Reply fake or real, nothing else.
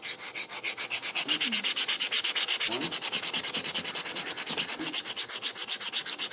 real